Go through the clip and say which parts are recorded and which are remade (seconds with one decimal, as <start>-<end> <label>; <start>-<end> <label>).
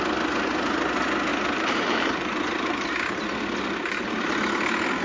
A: 0.0-1.3 recorded; 1.3-3.2 remade; 3.2-5.0 recorded